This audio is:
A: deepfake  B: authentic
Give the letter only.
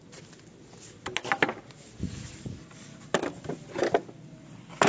B